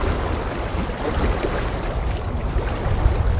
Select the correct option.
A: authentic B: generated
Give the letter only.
A